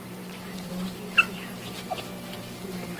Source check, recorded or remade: recorded